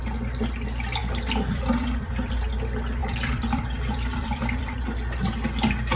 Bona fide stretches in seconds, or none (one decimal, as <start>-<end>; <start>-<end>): 0.0-1.0; 2.3-3.0; 4.8-6.0